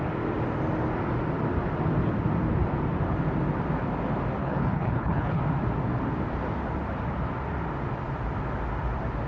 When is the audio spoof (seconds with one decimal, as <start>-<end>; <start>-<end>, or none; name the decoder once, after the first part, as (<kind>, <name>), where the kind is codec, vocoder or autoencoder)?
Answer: 4.4-5.4 (codec, HILCodec)